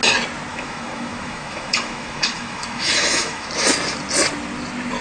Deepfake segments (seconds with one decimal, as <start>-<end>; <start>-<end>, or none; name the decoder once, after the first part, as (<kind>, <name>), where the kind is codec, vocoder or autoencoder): 0.5-3.5 (autoencoder, DAC-VAE)